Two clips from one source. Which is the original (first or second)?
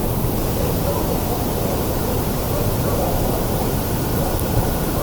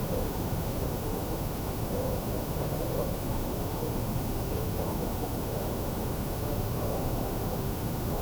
first